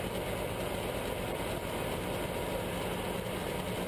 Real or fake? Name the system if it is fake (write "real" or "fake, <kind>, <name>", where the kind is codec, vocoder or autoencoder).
real